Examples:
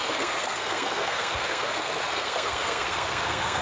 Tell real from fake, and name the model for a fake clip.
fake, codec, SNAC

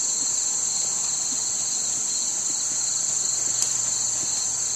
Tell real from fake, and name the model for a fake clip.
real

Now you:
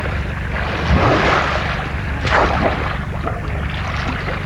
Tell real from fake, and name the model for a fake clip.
real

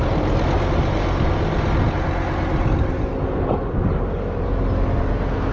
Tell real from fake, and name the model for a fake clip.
real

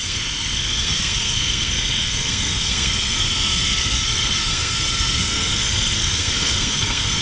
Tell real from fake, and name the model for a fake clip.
fake, codec, SNAC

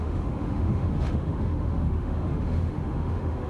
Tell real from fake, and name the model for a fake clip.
fake, autoencoder, DAC-VAE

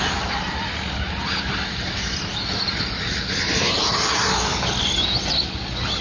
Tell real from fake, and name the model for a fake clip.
real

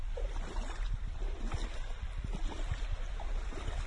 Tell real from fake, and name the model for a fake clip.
real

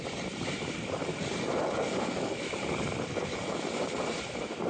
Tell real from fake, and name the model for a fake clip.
real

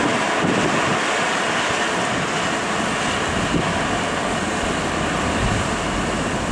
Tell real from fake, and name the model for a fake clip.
real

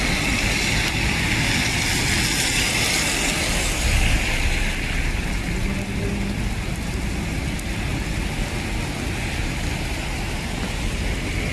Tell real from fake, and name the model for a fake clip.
real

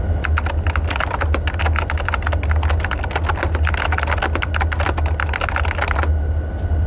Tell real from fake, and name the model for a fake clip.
real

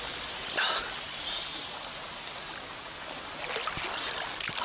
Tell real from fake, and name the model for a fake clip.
real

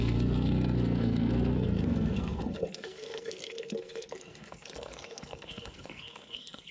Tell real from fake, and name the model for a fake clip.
fake, codec, SNAC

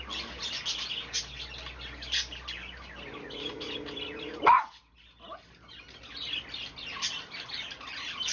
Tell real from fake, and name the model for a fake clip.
real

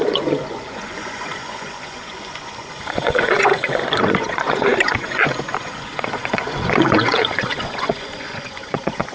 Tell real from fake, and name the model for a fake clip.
fake, vocoder, Vocos